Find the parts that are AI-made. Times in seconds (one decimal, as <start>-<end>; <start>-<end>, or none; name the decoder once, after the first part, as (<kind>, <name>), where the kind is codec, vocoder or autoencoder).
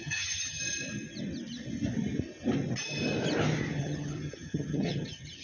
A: 0.0-0.6 (vocoder, HiFi-GAN); 3.8-5.4